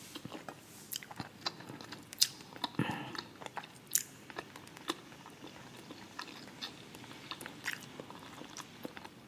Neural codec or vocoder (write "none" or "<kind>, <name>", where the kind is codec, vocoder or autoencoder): none